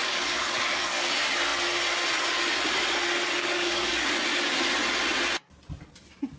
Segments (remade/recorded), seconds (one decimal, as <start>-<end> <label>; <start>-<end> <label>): 0.0-1.1 remade; 1.1-3.4 recorded; 3.4-4.1 remade; 4.1-6.4 recorded